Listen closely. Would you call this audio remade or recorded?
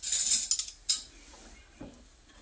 recorded